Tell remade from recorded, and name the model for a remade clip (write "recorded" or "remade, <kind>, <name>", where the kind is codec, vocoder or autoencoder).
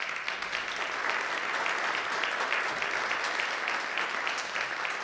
recorded